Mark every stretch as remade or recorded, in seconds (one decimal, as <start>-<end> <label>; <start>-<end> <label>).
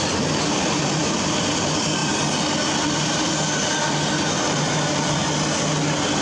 0.0-2.0 remade; 2.0-4.1 recorded; 4.1-5.2 remade; 5.2-6.2 recorded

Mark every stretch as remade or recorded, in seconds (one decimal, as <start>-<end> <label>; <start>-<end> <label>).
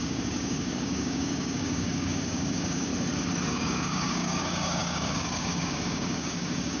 0.0-2.9 remade; 2.9-3.5 recorded; 3.5-6.8 remade